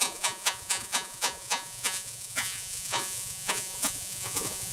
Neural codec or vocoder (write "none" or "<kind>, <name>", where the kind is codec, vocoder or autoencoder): vocoder, Vocos